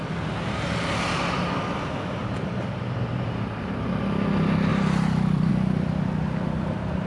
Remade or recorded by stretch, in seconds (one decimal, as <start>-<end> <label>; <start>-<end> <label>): 0.0-2.2 recorded; 2.2-4.0 remade; 4.0-4.7 recorded; 4.7-5.5 remade; 5.5-7.1 recorded